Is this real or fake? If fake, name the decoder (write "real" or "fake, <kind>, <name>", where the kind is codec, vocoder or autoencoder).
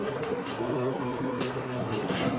fake, codec, SNAC